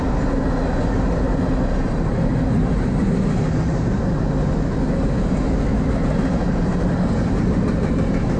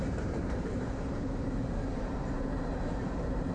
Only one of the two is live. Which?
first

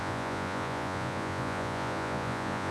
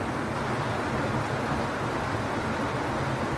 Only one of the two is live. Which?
second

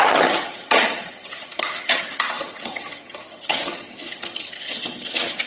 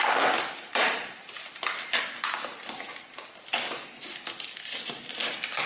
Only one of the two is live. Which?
second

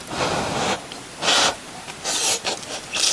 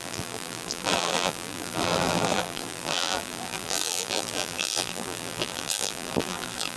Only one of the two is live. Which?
first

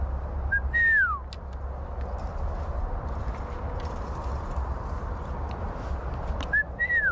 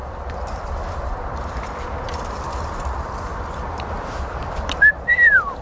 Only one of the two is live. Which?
first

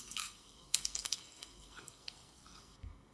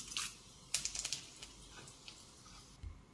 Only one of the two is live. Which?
second